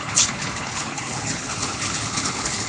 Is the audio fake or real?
fake